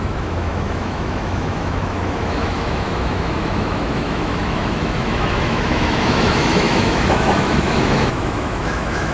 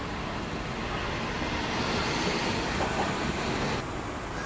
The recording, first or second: second